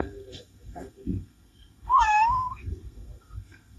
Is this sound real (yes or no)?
no